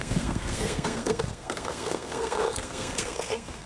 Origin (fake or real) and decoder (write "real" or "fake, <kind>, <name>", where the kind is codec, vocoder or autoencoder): fake, codec, SNAC